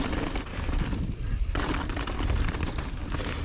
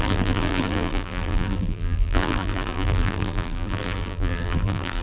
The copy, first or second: second